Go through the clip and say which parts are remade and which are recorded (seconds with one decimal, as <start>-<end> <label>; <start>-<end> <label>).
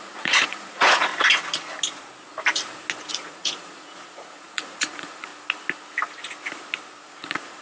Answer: 0.0-1.1 remade; 1.1-3.1 recorded; 3.1-5.3 remade; 5.3-7.0 recorded; 7.0-7.6 remade